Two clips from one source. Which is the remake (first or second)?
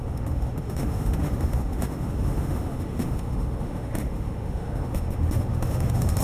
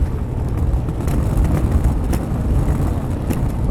first